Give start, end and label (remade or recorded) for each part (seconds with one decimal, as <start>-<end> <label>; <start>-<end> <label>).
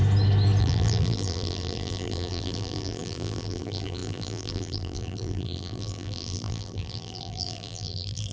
0.0-0.6 recorded; 0.6-8.3 remade